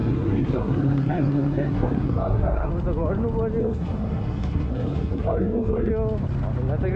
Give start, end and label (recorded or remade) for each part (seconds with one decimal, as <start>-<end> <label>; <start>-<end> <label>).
0.0-2.7 remade; 2.7-3.6 recorded; 3.6-5.9 remade; 5.9-7.0 recorded